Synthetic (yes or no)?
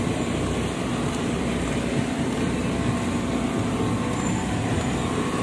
no